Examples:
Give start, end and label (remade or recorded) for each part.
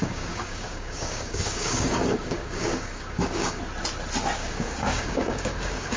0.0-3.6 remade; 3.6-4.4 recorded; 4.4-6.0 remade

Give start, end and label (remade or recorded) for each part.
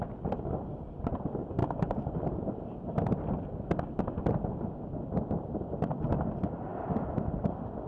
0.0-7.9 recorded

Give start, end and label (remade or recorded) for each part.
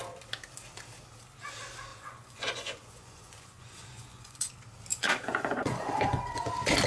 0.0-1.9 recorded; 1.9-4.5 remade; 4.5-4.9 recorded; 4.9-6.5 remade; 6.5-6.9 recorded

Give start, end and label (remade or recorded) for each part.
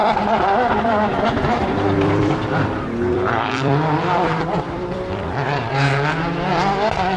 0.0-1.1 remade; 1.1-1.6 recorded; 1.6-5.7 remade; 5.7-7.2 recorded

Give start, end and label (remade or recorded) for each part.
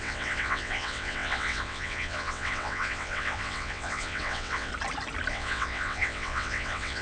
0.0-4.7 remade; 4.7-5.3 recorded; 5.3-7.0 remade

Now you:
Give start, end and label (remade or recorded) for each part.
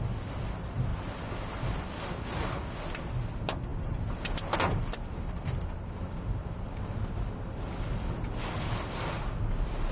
0.0-9.9 recorded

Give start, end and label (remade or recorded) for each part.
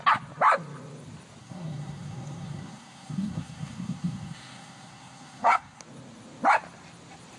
0.0-1.4 recorded; 1.4-5.8 remade; 5.8-7.4 recorded